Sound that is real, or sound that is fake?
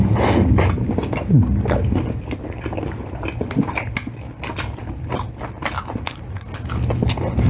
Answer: real